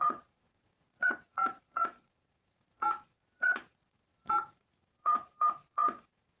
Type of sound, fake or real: fake